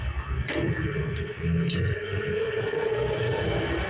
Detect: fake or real fake